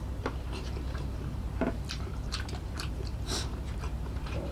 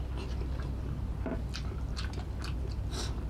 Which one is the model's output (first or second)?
first